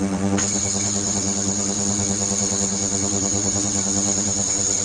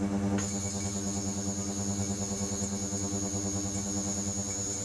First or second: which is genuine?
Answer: second